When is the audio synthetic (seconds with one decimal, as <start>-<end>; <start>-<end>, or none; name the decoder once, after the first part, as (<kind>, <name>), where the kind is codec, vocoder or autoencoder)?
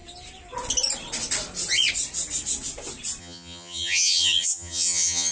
3.2-5.3 (vocoder, HiFi-GAN)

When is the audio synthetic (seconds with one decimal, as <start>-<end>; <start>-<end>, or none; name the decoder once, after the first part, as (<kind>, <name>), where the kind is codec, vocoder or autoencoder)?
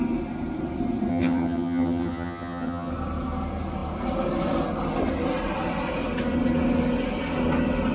1.1-2.9 (vocoder, HiFi-GAN)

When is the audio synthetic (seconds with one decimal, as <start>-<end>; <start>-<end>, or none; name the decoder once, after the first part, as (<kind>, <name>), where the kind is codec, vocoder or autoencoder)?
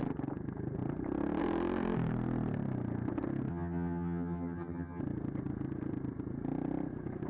3.5-5.0 (vocoder, HiFi-GAN)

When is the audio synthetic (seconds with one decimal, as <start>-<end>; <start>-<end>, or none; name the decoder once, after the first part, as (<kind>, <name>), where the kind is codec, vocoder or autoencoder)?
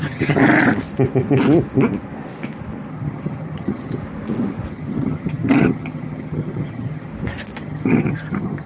0.0-0.4 (vocoder, HiFi-GAN); 2.9-4.0; 4.7-7.1; 7.6-8.7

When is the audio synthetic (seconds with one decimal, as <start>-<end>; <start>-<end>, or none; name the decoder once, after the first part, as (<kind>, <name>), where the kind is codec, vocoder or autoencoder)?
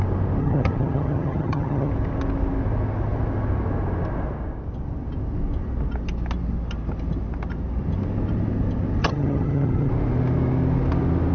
0.4-1.9 (vocoder, HiFi-GAN); 9.0-9.9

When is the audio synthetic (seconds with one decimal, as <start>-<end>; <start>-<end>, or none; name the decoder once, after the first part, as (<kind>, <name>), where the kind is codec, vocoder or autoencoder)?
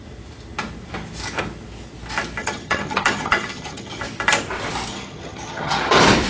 2.4-4.0 (vocoder, HiFi-GAN); 4.9-5.8